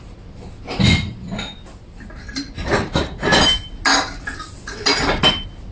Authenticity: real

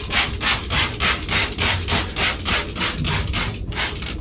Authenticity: real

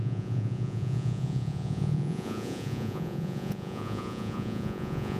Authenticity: fake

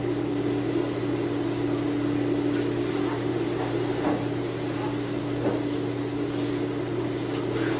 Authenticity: real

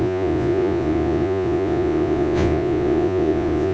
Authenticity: fake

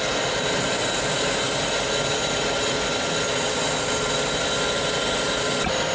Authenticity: real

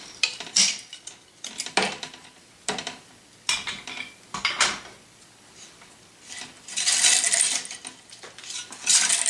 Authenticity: real